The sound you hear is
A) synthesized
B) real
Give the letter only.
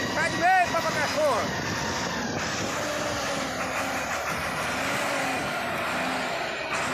B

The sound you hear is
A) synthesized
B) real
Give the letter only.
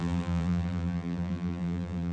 A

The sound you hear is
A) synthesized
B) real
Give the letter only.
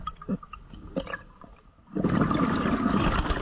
B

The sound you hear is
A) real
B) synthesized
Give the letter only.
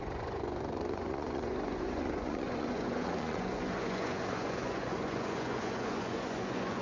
B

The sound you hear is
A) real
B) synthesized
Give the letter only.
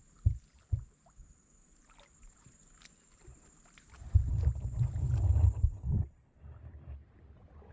A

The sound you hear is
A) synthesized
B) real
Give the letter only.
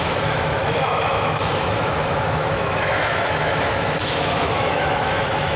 A